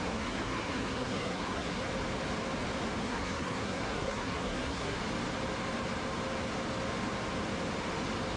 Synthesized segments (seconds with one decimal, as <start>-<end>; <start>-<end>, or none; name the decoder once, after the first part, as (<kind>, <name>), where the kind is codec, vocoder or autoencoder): 0.0-1.8 (codec, SNAC); 3.0-5.0